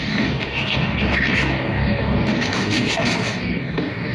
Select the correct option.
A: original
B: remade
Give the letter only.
B